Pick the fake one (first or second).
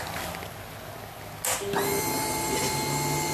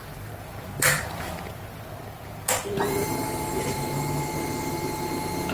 second